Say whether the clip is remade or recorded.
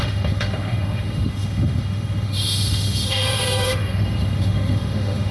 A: remade